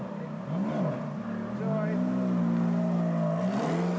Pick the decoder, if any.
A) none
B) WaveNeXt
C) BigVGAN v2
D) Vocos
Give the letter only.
A